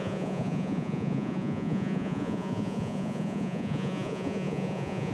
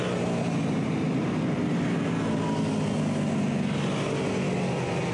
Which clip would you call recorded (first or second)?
second